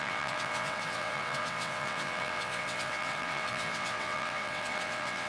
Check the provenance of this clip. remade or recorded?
remade